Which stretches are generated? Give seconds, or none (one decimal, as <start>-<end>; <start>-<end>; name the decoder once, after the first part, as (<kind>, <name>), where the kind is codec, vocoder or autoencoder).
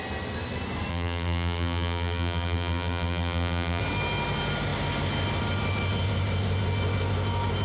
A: 0.9-3.8 (vocoder, BigVGAN v2)